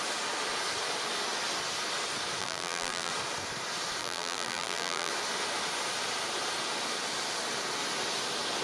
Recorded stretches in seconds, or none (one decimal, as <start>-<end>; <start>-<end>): 0.0-2.4; 3.1-4.0; 5.1-8.6